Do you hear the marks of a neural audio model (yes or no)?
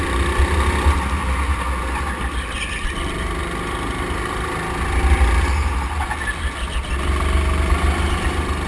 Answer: no